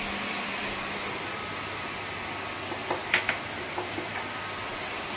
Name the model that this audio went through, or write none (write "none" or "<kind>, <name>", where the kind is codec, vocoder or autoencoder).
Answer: none